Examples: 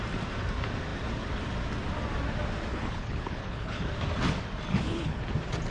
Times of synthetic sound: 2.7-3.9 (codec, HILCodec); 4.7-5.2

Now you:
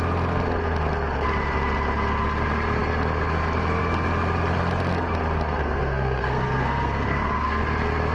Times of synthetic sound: 5.6-7.6 (codec, SNAC)

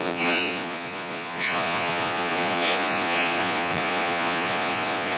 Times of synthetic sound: 0.0-5.2 (vocoder, Vocos)

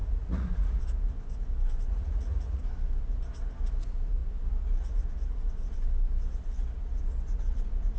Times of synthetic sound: 0.0-0.8 (vocoder, Vocos); 1.9-2.6

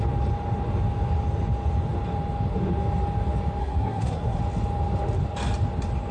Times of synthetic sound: 3.6-4.4 (codec, SNAC)